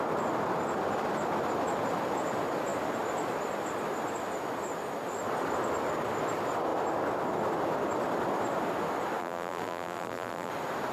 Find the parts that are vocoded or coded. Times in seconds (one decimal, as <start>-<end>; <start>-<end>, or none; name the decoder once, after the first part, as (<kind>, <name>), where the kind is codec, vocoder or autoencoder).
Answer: 9.2-10.5 (vocoder, BigVGAN v2)